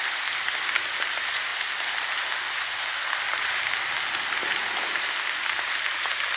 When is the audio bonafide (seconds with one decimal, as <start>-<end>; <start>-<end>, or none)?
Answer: 0.0-6.4